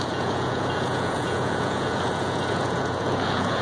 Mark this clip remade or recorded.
remade